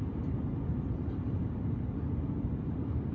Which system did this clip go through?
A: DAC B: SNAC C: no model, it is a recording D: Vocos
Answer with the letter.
C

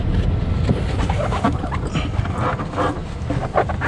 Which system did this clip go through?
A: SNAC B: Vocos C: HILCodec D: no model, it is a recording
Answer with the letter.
D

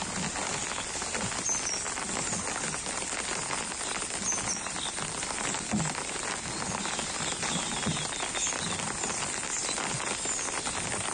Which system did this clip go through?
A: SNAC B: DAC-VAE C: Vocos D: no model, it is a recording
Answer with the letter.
D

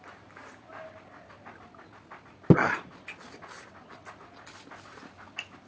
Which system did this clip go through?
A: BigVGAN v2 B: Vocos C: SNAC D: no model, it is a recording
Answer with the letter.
D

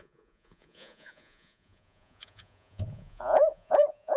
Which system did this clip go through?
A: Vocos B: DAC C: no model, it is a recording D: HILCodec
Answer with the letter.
A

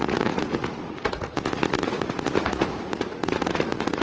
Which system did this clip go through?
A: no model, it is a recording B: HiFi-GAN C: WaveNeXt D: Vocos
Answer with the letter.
D